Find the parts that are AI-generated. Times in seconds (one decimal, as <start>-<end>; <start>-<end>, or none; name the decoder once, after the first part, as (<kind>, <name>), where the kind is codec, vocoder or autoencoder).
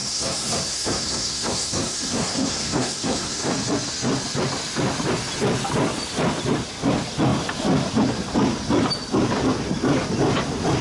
0.0-3.5 (codec, SNAC)